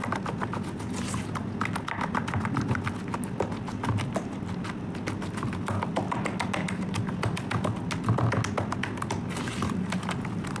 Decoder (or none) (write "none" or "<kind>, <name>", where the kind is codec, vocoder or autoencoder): none